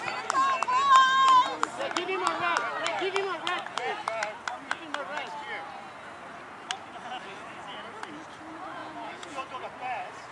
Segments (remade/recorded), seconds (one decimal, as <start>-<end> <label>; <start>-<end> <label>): 0.0-8.8 recorded; 8.8-9.6 remade; 9.6-10.3 recorded